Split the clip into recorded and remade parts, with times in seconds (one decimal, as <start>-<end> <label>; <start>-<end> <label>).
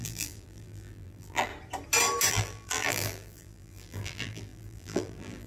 0.0-1.5 remade; 1.5-2.3 recorded; 2.3-5.5 remade